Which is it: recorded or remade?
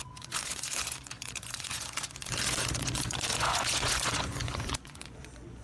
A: remade